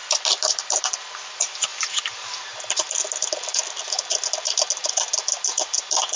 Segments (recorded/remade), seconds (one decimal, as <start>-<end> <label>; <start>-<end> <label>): 0.0-6.2 recorded